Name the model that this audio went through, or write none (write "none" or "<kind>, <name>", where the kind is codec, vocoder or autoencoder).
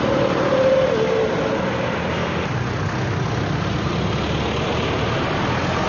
none